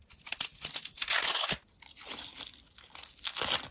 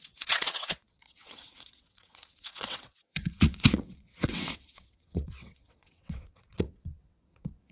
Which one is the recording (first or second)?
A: first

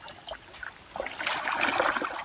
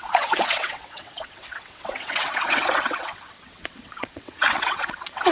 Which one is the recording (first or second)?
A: first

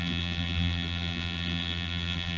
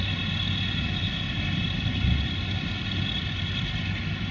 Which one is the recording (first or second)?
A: second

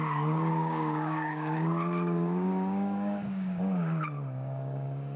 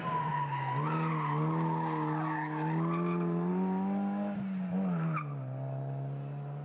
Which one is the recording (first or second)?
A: second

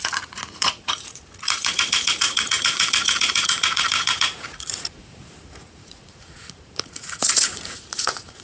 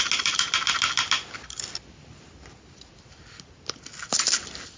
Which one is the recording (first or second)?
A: second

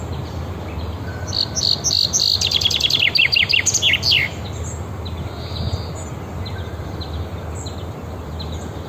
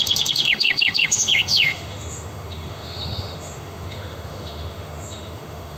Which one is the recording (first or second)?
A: first